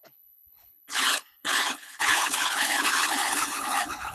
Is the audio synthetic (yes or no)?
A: yes